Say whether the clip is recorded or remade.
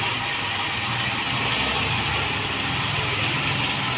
recorded